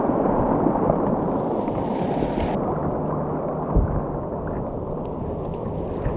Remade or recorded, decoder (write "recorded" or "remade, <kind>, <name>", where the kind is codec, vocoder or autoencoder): recorded